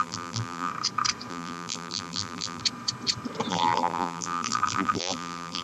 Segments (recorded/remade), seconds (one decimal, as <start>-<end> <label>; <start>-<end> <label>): 0.0-0.7 remade; 0.7-1.3 recorded; 1.3-2.6 remade; 2.6-3.5 recorded; 3.5-5.6 remade